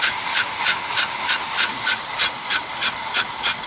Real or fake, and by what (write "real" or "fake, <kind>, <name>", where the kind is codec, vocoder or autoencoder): real